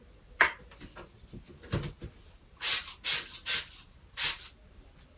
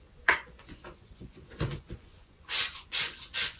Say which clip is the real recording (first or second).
first